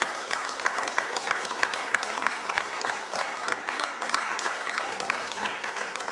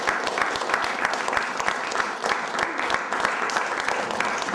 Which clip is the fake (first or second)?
first